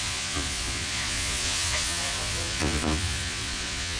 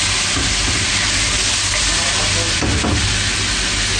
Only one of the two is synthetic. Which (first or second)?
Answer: first